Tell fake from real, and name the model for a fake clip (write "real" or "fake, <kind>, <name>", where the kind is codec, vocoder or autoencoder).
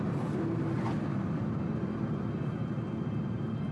real